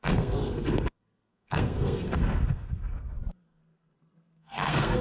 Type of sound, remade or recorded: remade